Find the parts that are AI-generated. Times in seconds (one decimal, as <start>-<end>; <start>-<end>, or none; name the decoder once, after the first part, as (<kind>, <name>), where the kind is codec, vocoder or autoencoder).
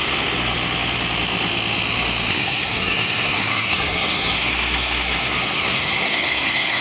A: 2.3-6.8 (codec, SNAC)